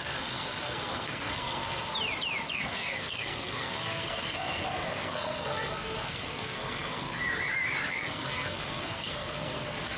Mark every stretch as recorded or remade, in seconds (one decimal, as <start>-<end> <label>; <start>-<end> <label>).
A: 0.0-1.9 remade; 1.9-2.5 recorded; 2.5-7.2 remade; 7.2-7.9 recorded; 7.9-10.0 remade